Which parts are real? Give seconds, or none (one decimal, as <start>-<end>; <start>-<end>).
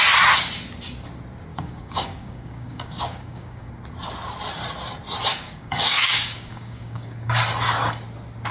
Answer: 0.0-1.5; 3.7-5.3; 7.4-8.5